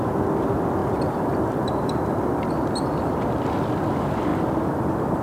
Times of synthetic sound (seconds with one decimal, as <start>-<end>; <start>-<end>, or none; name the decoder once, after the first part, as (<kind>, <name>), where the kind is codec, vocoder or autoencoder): 0.8-2.5 (vocoder, BigVGAN v2); 4.3-5.2